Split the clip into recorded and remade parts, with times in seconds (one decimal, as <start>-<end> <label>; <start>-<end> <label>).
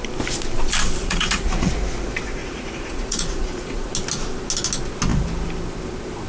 0.0-1.0 recorded; 1.0-1.7 remade; 1.7-2.4 recorded; 2.4-3.9 remade; 3.9-6.3 recorded